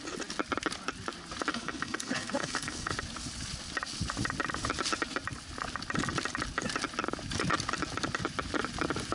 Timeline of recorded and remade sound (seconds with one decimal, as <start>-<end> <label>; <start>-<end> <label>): 0.0-1.5 recorded; 1.5-2.9 remade; 2.9-9.1 recorded